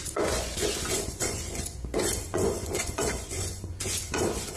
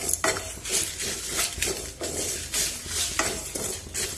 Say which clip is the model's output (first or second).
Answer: first